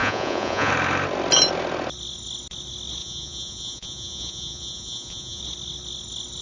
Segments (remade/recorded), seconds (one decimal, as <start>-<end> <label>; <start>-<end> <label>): 0.0-0.7 remade; 0.7-3.0 recorded; 3.0-5.4 remade; 5.4-6.4 recorded